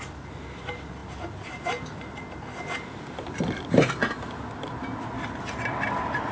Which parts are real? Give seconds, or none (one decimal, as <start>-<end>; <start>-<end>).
0.0-1.0; 4.8-6.3